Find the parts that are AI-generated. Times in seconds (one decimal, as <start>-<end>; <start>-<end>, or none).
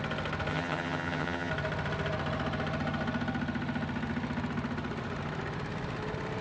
0.5-1.5